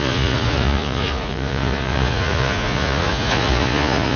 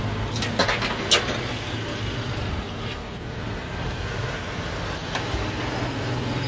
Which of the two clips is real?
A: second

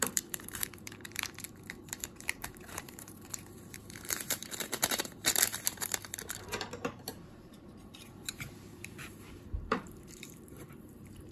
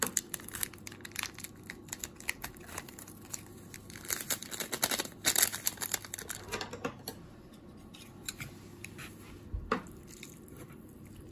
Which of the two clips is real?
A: second